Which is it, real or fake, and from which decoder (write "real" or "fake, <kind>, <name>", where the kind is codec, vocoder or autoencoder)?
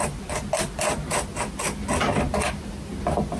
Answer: real